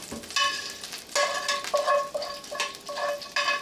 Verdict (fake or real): real